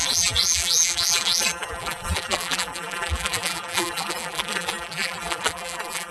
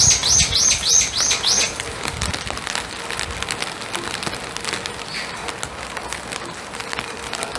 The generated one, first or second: first